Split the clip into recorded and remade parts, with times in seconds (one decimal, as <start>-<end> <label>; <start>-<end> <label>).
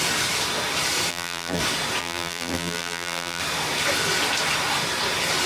0.0-1.1 recorded; 1.1-1.6 remade; 1.6-2.0 recorded; 2.0-3.4 remade; 3.4-5.5 recorded